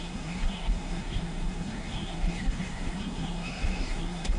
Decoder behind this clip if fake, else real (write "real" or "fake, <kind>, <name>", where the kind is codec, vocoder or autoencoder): fake, codec, SNAC